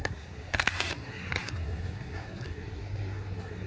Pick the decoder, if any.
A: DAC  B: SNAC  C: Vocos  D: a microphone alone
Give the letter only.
B